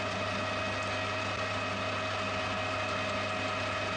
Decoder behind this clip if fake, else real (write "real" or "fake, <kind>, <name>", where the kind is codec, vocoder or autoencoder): real